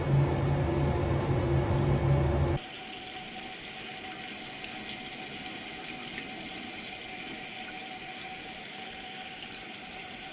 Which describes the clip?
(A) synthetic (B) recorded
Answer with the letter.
B